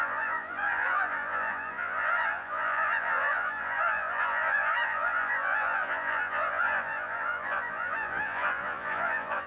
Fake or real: fake